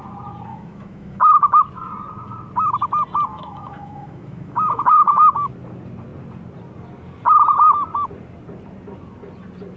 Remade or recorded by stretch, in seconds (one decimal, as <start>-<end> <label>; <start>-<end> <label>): 0.0-0.5 recorded; 0.5-1.6 remade; 1.6-3.3 recorded; 3.3-5.5 remade; 5.5-9.8 recorded